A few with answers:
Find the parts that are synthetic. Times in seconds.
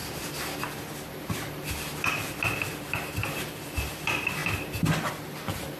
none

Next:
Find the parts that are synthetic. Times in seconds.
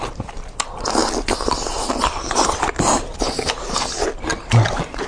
4.3-5.1 (vocoder, BigVGAN v2)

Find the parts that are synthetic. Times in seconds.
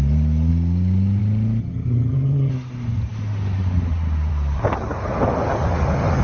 1.6-2.5 (vocoder, HiFi-GAN)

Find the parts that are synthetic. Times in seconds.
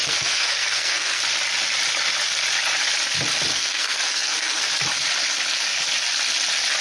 0.0-1.2 (codec, SNAC); 3.5-4.7